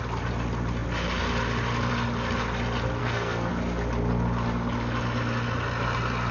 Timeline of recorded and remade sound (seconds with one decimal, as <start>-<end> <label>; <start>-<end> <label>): 0.0-3.0 recorded; 3.0-3.5 remade; 3.5-6.3 recorded